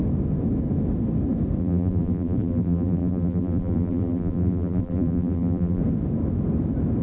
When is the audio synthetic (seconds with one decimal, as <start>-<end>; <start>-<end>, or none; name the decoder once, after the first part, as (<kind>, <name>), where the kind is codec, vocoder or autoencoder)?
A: 1.6-5.8 (vocoder, BigVGAN v2)

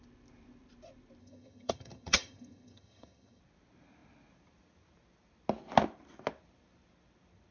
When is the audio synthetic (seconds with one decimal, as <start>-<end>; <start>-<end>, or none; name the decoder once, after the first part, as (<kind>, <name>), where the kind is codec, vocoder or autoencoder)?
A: 1.2-3.4 (vocoder, HiFi-GAN)

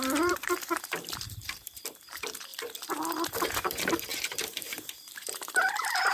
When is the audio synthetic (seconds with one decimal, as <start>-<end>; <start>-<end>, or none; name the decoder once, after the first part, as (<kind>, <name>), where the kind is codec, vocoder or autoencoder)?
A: 0.0-2.5 (vocoder, BigVGAN v2); 3.5-6.1